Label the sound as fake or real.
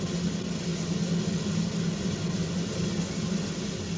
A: real